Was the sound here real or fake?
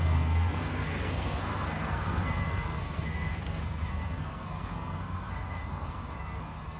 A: fake